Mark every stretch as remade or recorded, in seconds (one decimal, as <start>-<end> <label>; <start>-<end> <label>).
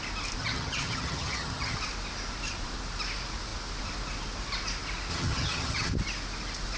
0.0-0.4 recorded; 0.4-1.8 remade; 1.8-5.1 recorded; 5.1-5.9 remade; 5.9-6.8 recorded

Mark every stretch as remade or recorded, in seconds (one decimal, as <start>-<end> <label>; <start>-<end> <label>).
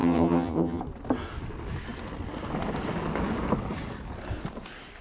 0.0-0.8 remade; 0.8-5.0 recorded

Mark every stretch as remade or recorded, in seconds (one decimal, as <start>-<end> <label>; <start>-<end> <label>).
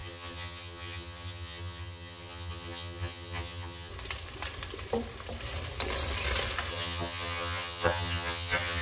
0.0-3.9 remade; 3.9-6.7 recorded; 6.7-8.8 remade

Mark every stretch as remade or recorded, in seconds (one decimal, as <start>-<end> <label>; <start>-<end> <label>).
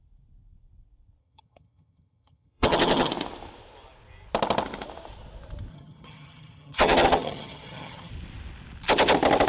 0.0-1.2 recorded; 1.2-3.1 remade; 3.1-5.7 recorded; 5.7-8.1 remade; 8.1-9.5 recorded